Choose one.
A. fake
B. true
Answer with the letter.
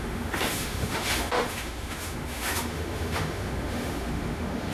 A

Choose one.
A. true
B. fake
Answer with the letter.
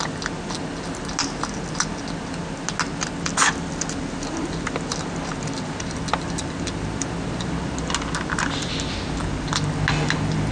A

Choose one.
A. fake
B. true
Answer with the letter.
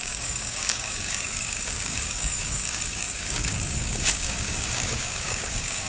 A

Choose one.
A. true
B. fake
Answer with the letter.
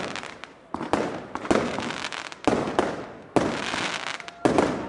A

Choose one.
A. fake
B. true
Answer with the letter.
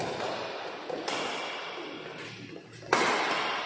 B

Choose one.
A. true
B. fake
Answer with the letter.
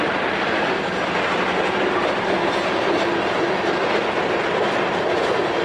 A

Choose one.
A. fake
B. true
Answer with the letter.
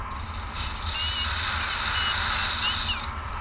B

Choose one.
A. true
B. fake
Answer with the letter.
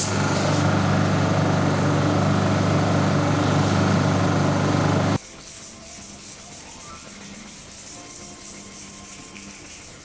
A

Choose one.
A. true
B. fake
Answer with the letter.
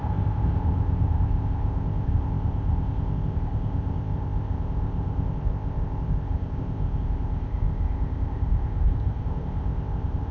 B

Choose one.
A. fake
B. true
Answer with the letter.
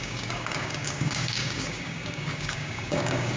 A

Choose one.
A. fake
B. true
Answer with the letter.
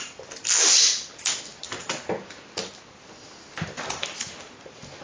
B